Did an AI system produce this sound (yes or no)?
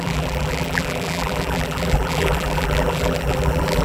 yes